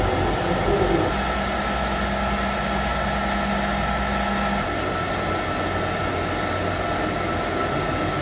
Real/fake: real